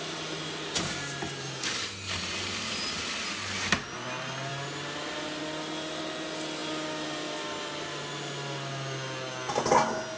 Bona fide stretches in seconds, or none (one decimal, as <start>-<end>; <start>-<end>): 0.0-10.2